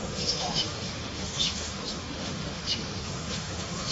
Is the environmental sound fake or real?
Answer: fake